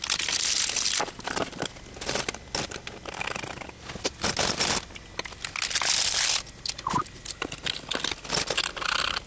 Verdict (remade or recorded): recorded